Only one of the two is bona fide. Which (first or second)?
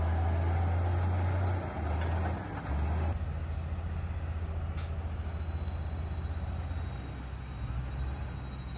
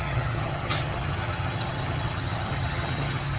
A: first